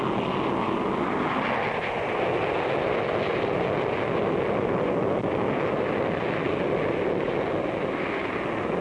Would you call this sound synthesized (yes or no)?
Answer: no